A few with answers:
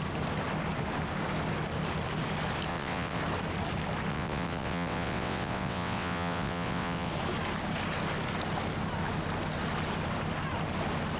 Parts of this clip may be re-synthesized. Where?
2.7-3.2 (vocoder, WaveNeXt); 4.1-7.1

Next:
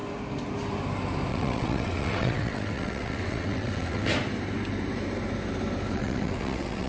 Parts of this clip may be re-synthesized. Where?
1.3-4.1 (vocoder, WaveNeXt); 5.9-6.9

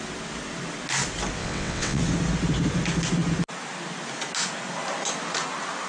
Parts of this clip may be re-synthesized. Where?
1.4-2.0 (vocoder, WaveNeXt)

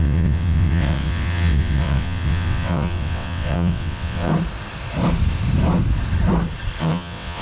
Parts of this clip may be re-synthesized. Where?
0.0-4.3 (vocoder, WaveNeXt); 6.8-7.4

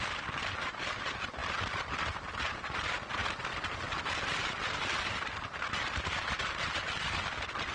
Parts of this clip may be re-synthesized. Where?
none

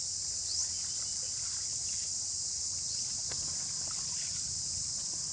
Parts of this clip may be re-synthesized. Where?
none